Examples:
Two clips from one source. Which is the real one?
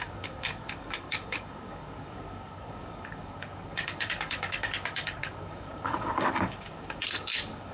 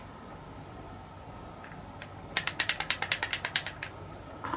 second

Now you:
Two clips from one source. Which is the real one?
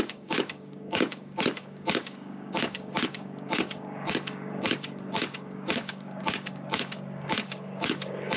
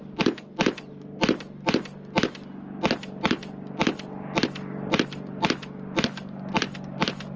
second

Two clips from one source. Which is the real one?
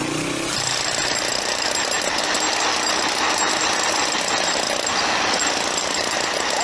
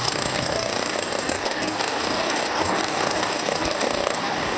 first